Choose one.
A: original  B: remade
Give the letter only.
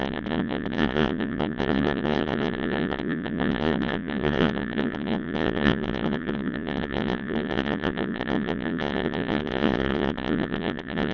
B